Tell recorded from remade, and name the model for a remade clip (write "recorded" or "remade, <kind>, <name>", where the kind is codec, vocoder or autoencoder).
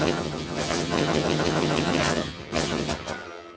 remade, vocoder, HiFi-GAN